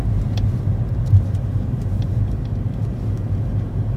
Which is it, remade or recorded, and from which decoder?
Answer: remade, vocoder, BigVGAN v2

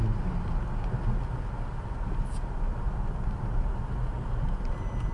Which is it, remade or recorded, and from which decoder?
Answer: recorded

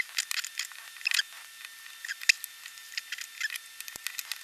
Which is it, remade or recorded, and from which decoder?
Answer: recorded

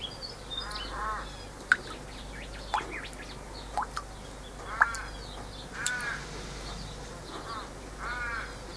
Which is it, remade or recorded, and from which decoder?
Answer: recorded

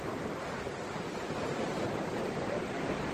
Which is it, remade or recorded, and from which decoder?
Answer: remade, vocoder, BigVGAN v2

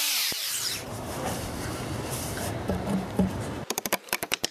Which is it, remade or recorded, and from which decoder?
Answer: remade, vocoder, BigVGAN v2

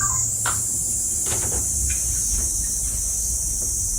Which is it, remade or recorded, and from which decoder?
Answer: remade, vocoder, BigVGAN v2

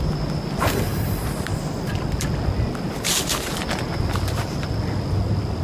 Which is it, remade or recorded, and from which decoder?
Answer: recorded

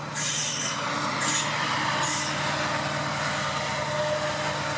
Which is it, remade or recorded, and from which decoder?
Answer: remade, vocoder, BigVGAN v2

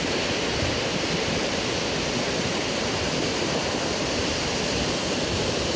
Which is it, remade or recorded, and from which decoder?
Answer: recorded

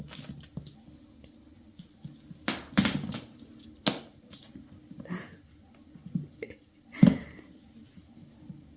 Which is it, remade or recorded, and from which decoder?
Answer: recorded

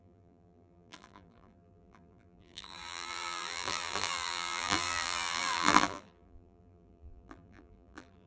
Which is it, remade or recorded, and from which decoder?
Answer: remade, vocoder, BigVGAN v2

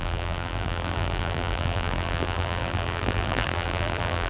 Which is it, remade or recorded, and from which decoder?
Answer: remade, vocoder, BigVGAN v2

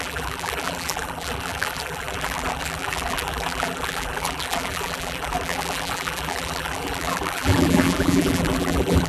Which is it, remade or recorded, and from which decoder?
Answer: remade, vocoder, BigVGAN v2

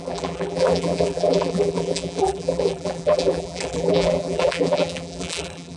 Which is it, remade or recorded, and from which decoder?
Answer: remade, vocoder, BigVGAN v2